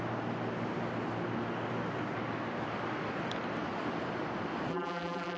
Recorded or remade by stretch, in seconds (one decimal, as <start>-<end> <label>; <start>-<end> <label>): 0.0-4.7 recorded; 4.7-5.4 remade